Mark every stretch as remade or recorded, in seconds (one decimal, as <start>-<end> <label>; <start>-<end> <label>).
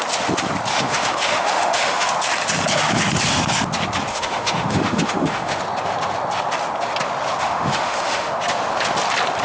0.0-0.7 recorded; 0.7-2.1 remade; 2.1-4.1 recorded; 4.1-5.6 remade; 5.6-7.4 recorded; 7.4-8.3 remade; 8.3-9.4 recorded